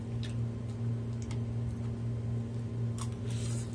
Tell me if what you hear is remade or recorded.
recorded